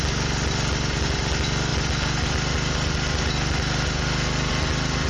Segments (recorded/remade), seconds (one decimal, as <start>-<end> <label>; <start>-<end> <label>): 0.0-5.1 recorded